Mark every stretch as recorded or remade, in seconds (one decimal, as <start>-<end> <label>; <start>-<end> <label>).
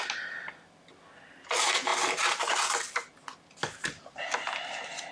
0.0-1.9 recorded; 1.9-2.5 remade; 2.5-5.1 recorded